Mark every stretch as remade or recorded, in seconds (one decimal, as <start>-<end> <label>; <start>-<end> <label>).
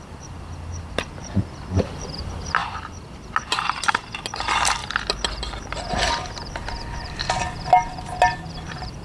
0.0-9.0 recorded